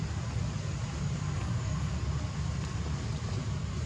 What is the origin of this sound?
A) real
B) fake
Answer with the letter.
A